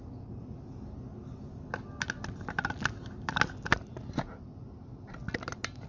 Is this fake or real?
real